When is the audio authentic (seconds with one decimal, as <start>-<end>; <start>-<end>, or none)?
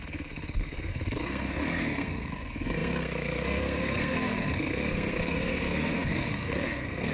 none